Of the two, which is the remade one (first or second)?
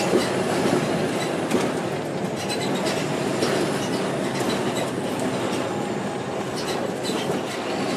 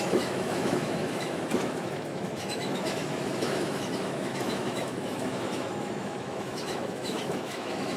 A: second